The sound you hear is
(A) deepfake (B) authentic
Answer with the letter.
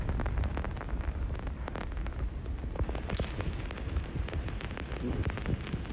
A